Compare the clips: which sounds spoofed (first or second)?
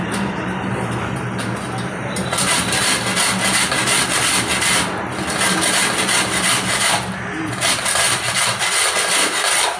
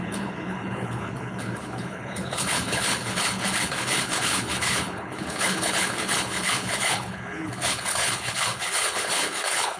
second